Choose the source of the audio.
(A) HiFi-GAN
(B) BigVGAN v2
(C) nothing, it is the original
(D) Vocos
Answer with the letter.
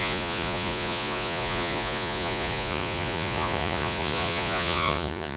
D